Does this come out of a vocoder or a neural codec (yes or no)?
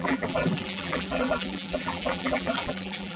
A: yes